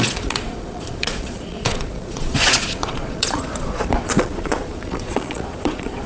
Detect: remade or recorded remade